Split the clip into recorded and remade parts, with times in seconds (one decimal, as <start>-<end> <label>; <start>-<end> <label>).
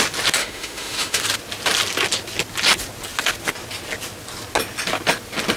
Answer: 0.0-0.4 recorded; 0.4-1.2 remade; 1.2-5.6 recorded